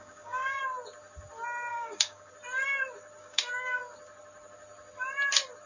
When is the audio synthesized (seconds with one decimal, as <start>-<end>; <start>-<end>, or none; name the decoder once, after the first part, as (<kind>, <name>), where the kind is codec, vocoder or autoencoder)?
0.0-0.6 (codec, DAC); 1.7-2.3; 3.2-3.8